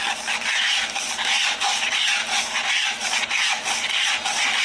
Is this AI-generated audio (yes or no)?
no